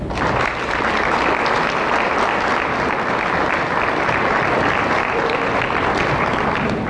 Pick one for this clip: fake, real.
real